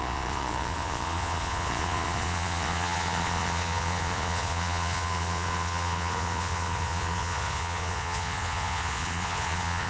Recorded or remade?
remade